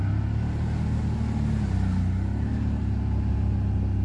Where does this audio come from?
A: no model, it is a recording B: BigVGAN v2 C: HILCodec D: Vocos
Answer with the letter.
A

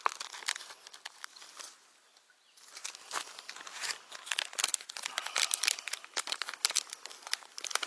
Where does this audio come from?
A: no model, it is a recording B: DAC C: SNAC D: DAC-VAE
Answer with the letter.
A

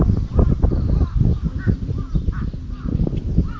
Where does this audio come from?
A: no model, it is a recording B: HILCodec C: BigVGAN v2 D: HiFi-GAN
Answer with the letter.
A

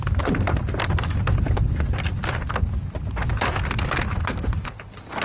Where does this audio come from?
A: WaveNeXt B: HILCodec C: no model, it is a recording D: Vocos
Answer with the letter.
C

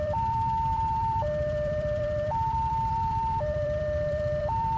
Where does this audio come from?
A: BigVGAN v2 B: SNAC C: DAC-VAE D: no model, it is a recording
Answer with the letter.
A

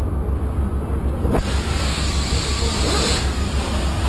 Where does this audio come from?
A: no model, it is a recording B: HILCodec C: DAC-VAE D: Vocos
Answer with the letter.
A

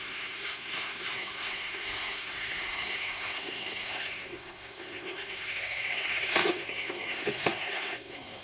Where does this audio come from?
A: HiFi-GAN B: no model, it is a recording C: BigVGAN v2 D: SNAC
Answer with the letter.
D